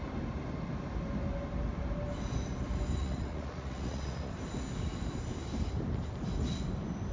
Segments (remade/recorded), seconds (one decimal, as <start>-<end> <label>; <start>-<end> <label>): 0.0-3.0 recorded; 3.0-4.3 remade; 4.3-7.1 recorded